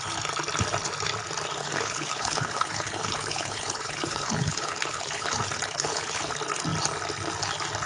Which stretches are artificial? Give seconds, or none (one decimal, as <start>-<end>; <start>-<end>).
1.6-6.3